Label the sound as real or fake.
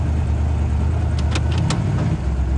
real